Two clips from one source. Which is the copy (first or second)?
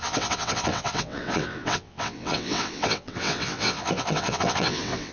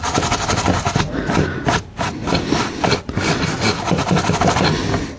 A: first